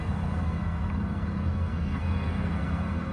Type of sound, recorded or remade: remade